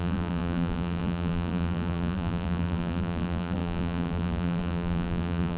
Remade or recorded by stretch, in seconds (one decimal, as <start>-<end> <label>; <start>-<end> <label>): 0.0-5.6 remade